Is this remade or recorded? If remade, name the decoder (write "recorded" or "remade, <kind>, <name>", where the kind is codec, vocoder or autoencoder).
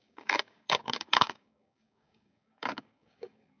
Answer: remade, codec, DAC